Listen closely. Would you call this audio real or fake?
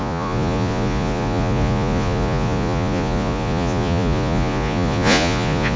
fake